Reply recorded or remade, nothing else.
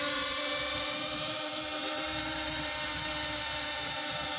remade